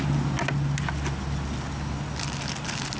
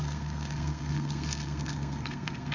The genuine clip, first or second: first